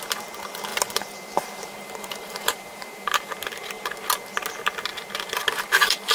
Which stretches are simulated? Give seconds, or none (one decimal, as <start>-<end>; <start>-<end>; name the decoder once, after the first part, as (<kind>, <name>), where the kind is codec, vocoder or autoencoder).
0.7-3.3 (vocoder, BigVGAN v2)